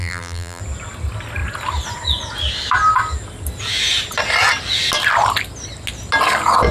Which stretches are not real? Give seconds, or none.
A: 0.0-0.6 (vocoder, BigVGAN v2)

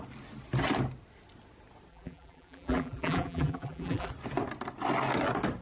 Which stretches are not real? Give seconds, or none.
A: 1.9-4.1 (vocoder, BigVGAN v2)

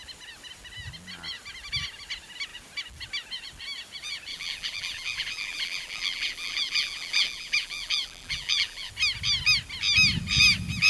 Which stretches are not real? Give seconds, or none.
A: 4.3-8.9 (vocoder, BigVGAN v2)

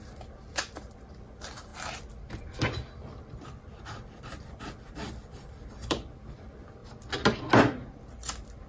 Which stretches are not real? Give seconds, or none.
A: 0.0-1.7 (vocoder, BigVGAN v2); 2.9-6.8

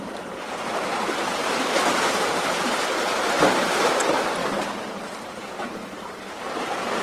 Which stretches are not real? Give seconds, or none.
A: 0.0-7.0 (vocoder, BigVGAN v2)

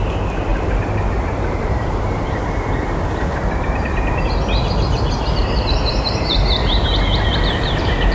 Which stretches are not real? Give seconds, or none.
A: 0.5-2.4 (vocoder, BigVGAN v2); 5.4-6.8